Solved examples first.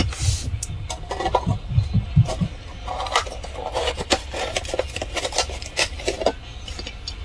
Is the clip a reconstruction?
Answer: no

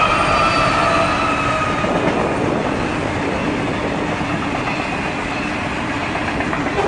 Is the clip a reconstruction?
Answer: no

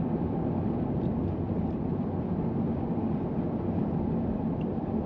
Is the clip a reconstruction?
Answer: yes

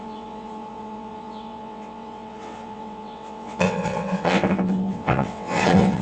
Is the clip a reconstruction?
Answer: yes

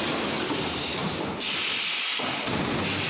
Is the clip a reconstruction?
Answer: no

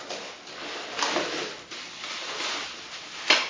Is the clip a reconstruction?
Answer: no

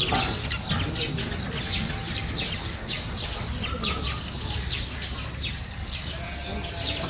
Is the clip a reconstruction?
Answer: no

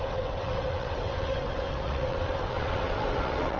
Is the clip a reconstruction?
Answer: yes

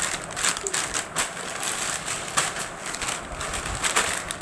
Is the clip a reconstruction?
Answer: no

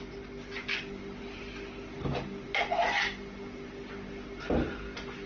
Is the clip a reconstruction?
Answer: no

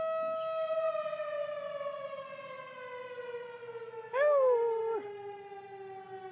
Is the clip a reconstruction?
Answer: no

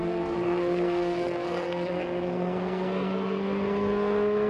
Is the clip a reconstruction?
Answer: yes